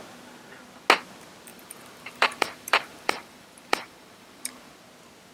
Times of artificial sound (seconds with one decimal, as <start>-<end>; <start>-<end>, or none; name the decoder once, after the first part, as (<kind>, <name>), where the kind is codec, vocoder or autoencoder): 1.5-4.7 (vocoder, BigVGAN v2)